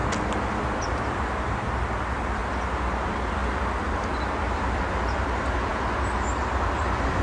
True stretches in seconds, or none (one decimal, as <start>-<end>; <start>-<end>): 0.0-0.6; 2.4-2.9; 3.4-4.1; 5.7-6.4